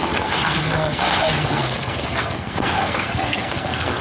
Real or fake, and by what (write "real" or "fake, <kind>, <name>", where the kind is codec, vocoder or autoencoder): fake, codec, SNAC